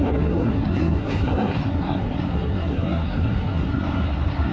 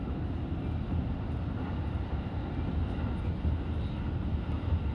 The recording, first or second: second